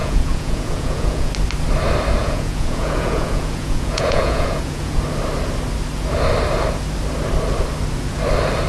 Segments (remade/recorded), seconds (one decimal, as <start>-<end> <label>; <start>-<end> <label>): 0.0-1.3 remade; 1.3-2.2 recorded; 2.2-5.0 remade; 5.0-8.7 recorded